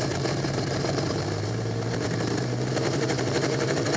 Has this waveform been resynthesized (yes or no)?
yes